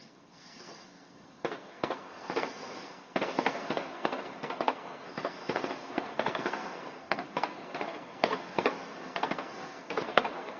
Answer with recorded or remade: remade